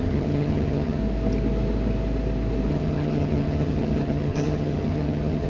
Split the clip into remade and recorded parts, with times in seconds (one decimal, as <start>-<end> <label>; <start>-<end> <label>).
0.0-1.0 remade; 1.0-2.7 recorded; 2.7-5.5 remade

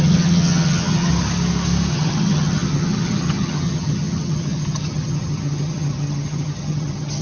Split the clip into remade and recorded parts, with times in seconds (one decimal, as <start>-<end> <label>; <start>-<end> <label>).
0.0-1.1 remade; 1.1-1.9 recorded; 1.9-7.2 remade